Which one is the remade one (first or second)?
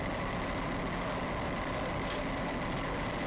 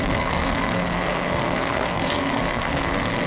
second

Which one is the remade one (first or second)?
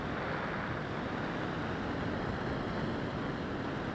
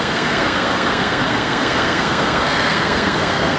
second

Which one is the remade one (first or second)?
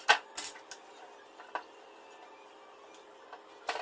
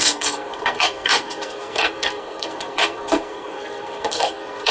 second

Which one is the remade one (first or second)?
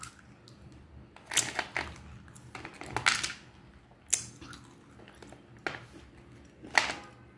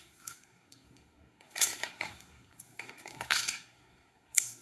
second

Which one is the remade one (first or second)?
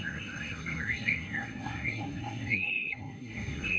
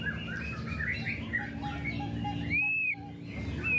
first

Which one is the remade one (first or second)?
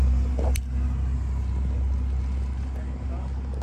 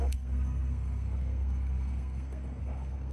second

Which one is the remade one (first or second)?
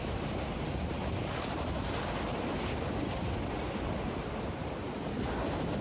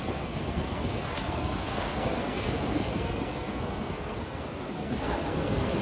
second